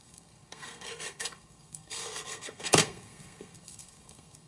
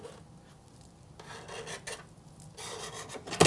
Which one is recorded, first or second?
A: second